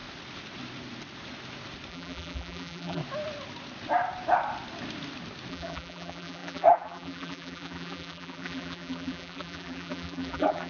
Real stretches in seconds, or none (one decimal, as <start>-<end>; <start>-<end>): 0.0-1.9; 3.0-5.5